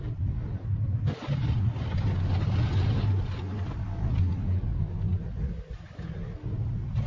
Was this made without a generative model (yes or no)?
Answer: yes